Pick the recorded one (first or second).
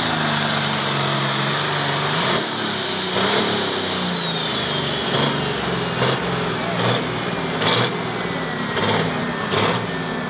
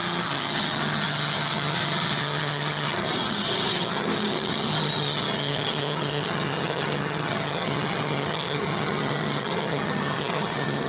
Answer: first